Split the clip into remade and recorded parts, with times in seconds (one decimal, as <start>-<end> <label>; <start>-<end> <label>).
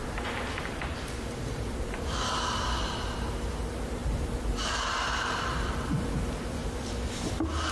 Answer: 0.0-3.3 remade; 3.3-4.0 recorded; 4.0-5.9 remade; 5.9-6.6 recorded; 6.6-7.3 remade; 7.3-7.7 recorded